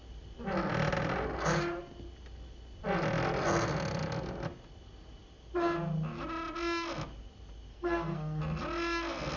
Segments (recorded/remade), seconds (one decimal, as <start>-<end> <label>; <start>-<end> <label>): 0.0-7.7 recorded; 7.7-8.4 remade; 8.4-9.4 recorded